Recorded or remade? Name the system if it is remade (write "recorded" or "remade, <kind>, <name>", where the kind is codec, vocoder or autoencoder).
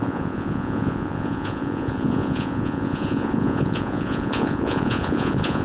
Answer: remade, vocoder, Vocos